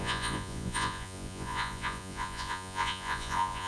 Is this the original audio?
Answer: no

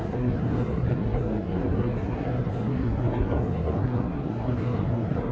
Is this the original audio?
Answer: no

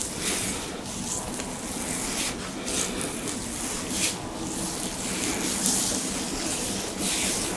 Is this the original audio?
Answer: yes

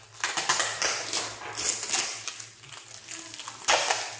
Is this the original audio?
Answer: yes